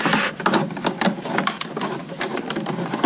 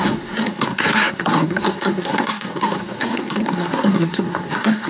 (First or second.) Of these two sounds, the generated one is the second